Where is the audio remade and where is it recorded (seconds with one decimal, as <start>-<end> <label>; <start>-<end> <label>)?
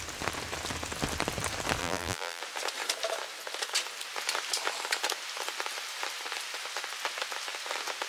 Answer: 0.0-1.8 recorded; 1.8-2.4 remade; 2.4-8.1 recorded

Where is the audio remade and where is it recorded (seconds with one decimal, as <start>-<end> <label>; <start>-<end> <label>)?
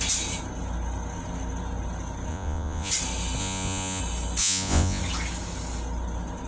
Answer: 0.0-2.3 recorded; 2.3-2.9 remade; 2.9-3.4 recorded; 3.4-4.0 remade; 4.0-4.4 recorded; 4.4-5.0 remade; 5.0-6.5 recorded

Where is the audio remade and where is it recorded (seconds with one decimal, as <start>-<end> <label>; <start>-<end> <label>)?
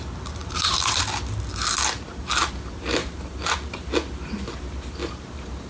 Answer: 0.0-0.4 recorded; 0.4-1.0 remade; 1.0-3.0 recorded; 3.0-3.5 remade; 3.5-5.0 recorded; 5.0-5.7 remade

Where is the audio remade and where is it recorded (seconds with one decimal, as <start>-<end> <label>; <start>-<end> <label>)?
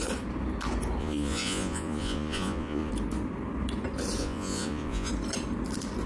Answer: 0.0-1.0 recorded; 1.0-2.9 remade; 2.9-4.2 recorded; 4.2-5.1 remade; 5.1-6.1 recorded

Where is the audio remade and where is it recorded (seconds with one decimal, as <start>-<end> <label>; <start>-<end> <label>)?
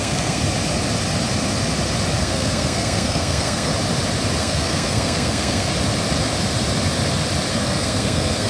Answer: 0.0-0.4 remade; 0.4-2.2 recorded; 2.2-3.7 remade; 3.7-4.4 recorded; 4.4-5.7 remade; 5.7-7.5 recorded; 7.5-8.5 remade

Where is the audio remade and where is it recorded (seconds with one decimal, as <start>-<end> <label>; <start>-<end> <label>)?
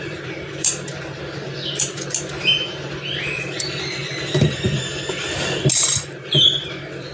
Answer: 0.0-0.9 remade; 0.9-3.1 recorded; 3.1-4.0 remade; 4.0-5.1 recorded; 5.1-7.1 remade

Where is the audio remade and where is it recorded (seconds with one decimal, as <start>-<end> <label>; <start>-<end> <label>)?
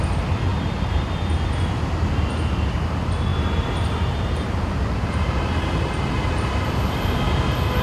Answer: 0.0-0.5 recorded; 0.5-1.1 remade; 1.1-3.3 recorded; 3.3-6.7 remade; 6.7-7.8 recorded